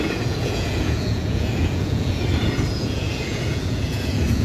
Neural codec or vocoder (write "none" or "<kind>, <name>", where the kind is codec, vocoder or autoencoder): vocoder, Vocos